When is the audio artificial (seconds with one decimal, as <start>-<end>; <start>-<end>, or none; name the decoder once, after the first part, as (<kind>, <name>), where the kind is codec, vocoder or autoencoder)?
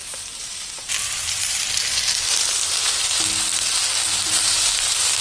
0.0-3.0 (vocoder, BigVGAN v2)